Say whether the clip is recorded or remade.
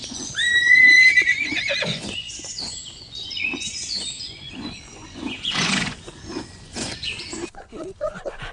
remade